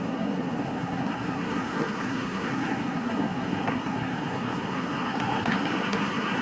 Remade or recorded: remade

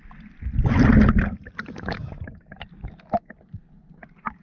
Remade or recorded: recorded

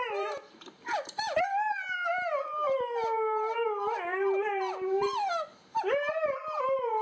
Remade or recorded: remade